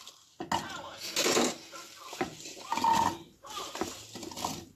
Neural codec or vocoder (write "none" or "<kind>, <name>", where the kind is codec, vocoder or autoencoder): none